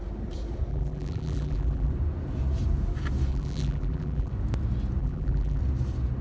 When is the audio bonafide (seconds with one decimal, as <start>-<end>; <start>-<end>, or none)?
0.0-0.7; 1.9-3.3; 4.3-5.0; 5.6-6.2